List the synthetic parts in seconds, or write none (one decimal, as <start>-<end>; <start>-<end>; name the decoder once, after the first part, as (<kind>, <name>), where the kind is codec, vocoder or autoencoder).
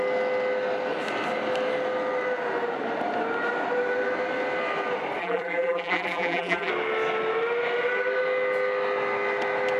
5.2-6.7 (vocoder, BigVGAN v2)